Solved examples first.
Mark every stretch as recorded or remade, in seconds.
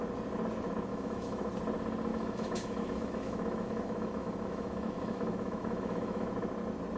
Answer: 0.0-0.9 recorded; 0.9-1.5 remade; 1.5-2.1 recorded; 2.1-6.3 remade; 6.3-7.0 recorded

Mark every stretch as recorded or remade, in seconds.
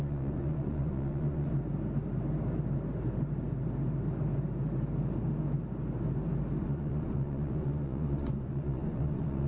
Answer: 0.0-1.5 remade; 1.5-6.6 recorded; 6.6-9.5 remade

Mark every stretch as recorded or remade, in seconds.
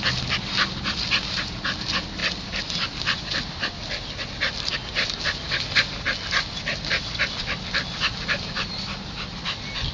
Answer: 0.0-9.9 recorded